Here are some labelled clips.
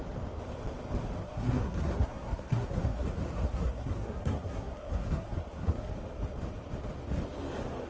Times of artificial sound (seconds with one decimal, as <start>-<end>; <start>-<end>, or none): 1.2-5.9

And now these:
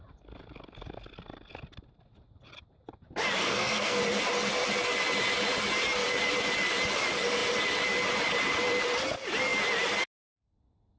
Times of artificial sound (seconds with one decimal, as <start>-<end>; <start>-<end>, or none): 3.4-4.0

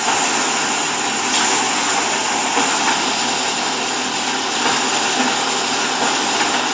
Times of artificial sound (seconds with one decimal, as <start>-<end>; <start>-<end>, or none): none

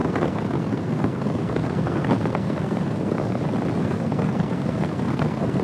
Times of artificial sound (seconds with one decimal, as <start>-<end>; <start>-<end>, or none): 0.0-3.4; 3.8-5.6

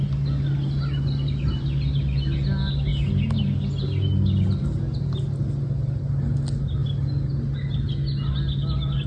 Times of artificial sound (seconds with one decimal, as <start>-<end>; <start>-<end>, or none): none